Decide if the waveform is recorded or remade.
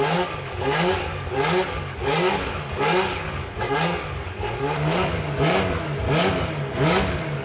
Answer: remade